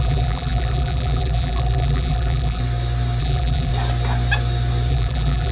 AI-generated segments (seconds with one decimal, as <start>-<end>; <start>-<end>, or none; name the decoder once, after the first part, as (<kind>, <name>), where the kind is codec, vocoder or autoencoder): 0.0-2.6 (vocoder, BigVGAN v2); 3.2-3.7; 4.9-5.5